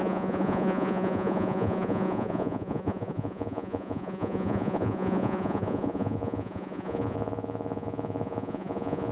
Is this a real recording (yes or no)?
no